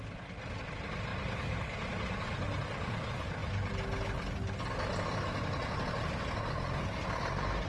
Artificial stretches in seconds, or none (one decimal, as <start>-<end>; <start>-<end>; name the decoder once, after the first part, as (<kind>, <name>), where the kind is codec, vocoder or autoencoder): none